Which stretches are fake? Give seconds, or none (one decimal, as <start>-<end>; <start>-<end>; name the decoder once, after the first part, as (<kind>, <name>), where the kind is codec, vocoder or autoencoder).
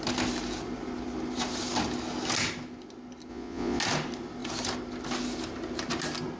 3.3-3.8 (vocoder, Vocos)